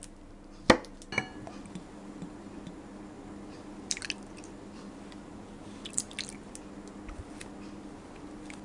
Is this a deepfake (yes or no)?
no